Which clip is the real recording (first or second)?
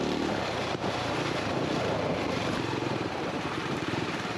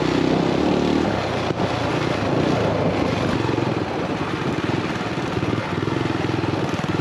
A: second